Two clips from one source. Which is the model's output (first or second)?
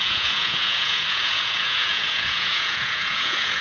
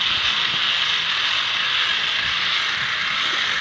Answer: first